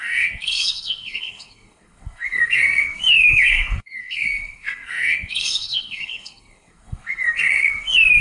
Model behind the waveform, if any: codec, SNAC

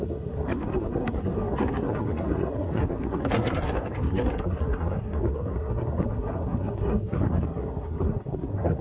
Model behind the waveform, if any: codec, SNAC